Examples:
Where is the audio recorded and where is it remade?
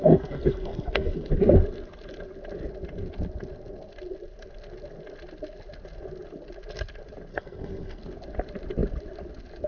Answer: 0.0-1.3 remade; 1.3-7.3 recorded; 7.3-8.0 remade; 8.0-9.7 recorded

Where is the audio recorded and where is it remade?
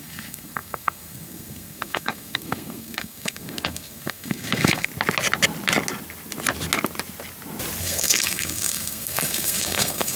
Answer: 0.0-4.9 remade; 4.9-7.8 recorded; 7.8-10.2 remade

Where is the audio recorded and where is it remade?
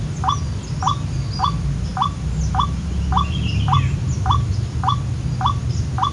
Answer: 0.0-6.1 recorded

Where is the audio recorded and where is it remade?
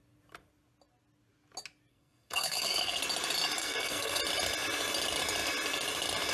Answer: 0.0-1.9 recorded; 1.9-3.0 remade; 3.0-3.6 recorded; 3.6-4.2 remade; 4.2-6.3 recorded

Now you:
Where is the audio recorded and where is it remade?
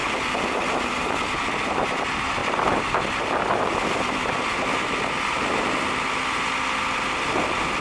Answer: 0.0-7.8 recorded